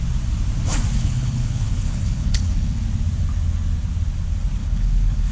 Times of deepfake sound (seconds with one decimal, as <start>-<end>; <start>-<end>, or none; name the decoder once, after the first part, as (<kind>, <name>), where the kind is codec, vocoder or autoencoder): 1.0-2.8 (codec, HILCodec); 4.6-5.3